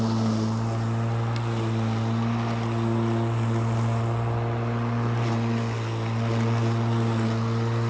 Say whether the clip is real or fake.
real